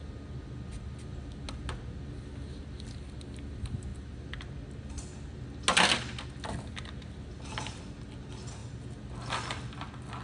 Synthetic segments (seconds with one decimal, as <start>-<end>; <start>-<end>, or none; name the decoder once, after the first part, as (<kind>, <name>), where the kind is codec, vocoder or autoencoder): none